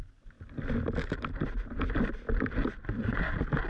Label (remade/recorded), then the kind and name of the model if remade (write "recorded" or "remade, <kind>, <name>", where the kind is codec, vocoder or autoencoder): recorded